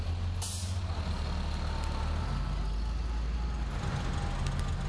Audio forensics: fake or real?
real